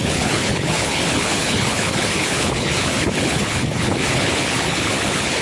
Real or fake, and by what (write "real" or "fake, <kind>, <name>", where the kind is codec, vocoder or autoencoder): fake, codec, HILCodec